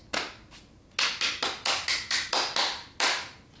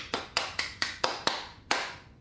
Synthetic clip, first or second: second